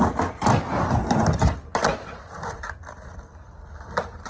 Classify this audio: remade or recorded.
recorded